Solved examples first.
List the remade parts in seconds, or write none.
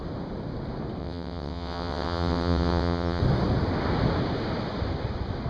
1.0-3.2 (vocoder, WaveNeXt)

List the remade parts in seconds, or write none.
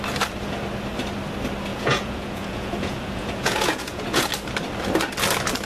1.7-4.3 (vocoder, Vocos)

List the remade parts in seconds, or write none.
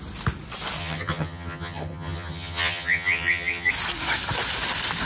0.8-3.7 (vocoder, HiFi-GAN)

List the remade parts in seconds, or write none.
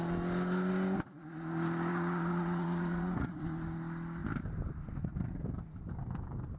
1.9-3.4 (vocoder, Vocos)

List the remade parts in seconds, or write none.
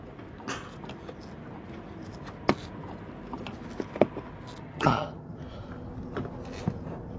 4.6-5.4 (vocoder, HiFi-GAN)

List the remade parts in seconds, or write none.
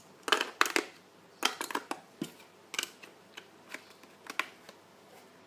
none